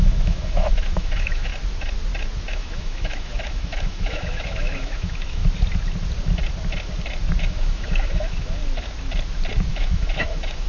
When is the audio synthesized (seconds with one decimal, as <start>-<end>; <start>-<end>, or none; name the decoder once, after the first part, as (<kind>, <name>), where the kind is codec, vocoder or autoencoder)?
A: 0.0-1.5 (autoencoder, DAC-VAE); 2.5-5.4; 7.4-8.6; 9.7-10.7